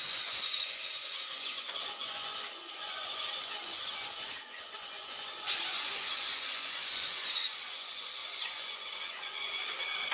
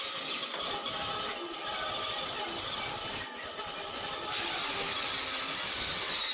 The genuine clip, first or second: second